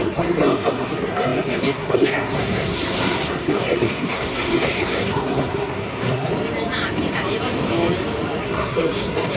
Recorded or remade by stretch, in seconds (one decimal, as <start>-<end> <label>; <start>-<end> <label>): 0.0-6.3 remade; 6.3-8.4 recorded; 8.4-9.4 remade